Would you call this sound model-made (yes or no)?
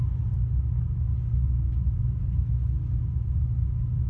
no